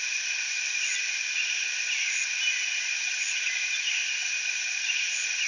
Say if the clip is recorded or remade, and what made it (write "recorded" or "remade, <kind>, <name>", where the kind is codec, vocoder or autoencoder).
recorded